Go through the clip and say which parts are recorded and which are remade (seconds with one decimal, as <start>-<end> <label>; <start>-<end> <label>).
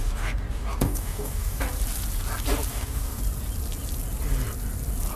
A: 0.0-1.6 remade; 1.6-2.7 recorded; 2.7-3.2 remade; 3.2-5.2 recorded